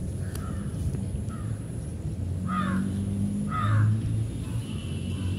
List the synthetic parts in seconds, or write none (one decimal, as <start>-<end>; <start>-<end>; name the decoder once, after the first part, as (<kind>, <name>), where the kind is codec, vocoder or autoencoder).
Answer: 1.3-1.9 (vocoder, BigVGAN v2); 4.6-5.4